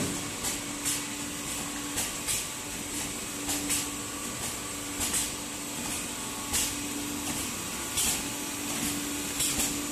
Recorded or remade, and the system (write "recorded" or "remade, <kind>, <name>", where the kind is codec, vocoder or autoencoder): recorded